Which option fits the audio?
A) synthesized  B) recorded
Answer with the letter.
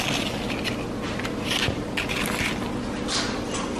B